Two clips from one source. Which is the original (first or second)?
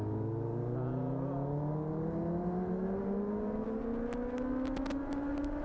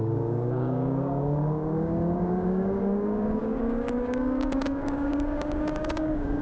first